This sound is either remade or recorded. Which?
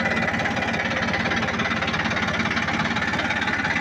recorded